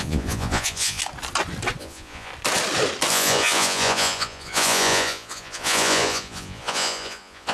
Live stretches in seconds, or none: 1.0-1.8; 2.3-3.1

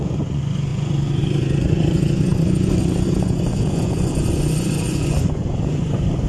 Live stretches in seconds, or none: none